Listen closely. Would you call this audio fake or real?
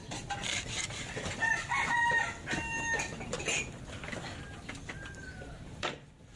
fake